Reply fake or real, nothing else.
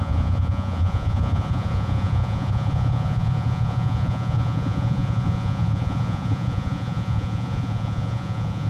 fake